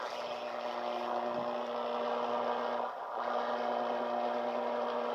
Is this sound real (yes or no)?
yes